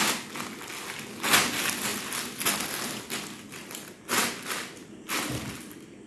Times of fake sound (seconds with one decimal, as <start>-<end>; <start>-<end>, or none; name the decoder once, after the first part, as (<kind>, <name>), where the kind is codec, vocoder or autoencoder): none